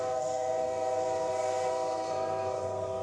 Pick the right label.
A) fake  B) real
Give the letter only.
A